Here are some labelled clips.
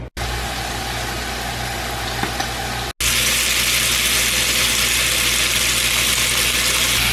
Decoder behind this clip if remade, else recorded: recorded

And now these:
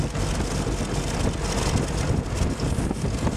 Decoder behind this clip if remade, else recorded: recorded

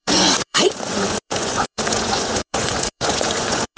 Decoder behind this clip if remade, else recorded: remade, vocoder, Vocos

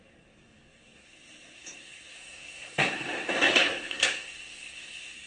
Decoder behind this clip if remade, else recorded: remade, codec, SNAC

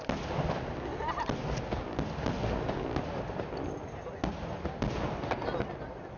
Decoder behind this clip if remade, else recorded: recorded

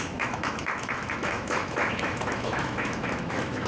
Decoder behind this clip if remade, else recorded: remade, autoencoder, DAC-VAE